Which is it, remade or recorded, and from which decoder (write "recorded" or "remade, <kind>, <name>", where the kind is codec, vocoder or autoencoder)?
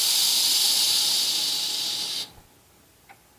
recorded